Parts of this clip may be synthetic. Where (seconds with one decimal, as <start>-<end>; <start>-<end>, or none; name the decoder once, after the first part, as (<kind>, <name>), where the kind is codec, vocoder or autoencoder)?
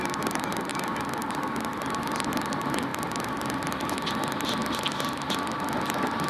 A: none